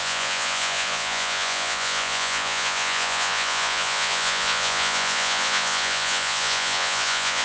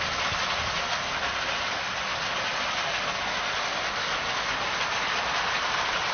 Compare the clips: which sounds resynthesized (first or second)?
first